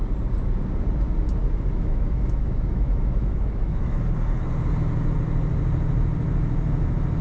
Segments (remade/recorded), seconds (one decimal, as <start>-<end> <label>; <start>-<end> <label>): 0.0-1.7 recorded; 1.7-4.0 remade; 4.0-7.2 recorded